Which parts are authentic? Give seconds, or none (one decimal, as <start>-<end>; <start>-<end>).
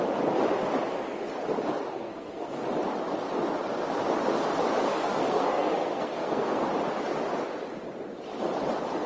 0.0-1.9; 2.6-4.9; 6.7-9.1